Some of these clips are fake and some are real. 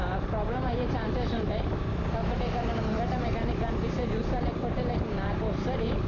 real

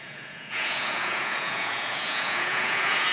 fake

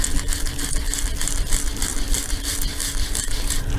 real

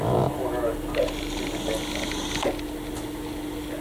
real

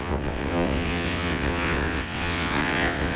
fake